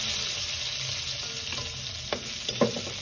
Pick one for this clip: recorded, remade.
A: recorded